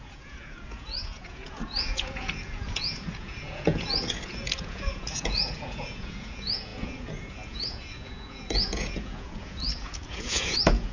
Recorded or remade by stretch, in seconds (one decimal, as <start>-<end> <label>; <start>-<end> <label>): 0.0-10.9 remade

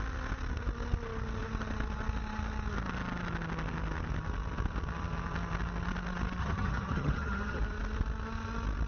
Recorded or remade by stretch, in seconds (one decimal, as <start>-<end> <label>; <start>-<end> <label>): 0.0-6.4 recorded; 6.4-7.6 remade; 7.6-8.9 recorded